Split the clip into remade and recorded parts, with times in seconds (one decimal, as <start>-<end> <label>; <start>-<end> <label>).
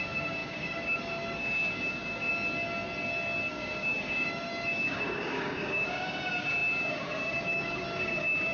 0.0-2.3 remade; 2.3-3.5 recorded; 3.5-8.5 remade